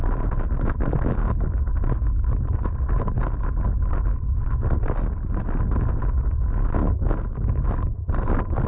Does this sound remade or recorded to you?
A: recorded